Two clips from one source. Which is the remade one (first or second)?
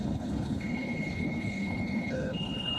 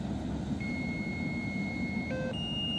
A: first